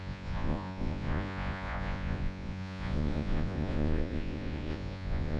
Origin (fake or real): fake